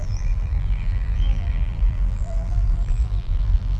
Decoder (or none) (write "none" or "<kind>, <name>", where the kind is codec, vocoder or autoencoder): vocoder, BigVGAN v2